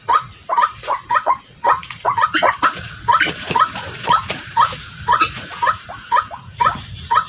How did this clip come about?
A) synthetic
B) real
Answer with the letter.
A